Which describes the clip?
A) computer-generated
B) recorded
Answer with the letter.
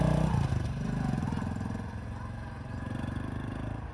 A